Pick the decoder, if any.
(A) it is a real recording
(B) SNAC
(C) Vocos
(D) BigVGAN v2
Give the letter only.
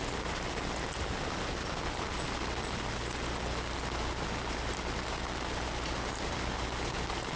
A